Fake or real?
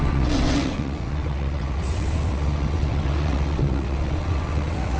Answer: fake